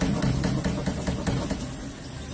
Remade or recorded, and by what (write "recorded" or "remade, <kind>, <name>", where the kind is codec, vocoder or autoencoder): recorded